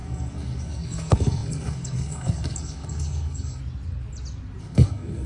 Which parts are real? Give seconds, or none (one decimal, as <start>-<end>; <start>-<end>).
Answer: 3.6-4.6